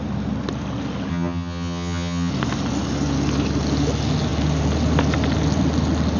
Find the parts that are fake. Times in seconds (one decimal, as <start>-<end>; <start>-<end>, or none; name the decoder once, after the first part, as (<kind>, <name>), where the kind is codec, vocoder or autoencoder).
1.1-2.3 (vocoder, HiFi-GAN)